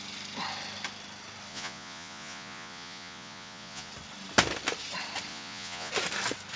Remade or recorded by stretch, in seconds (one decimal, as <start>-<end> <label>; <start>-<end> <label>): 0.0-1.5 recorded; 1.5-3.9 remade; 3.9-5.3 recorded; 5.3-5.9 remade; 5.9-6.6 recorded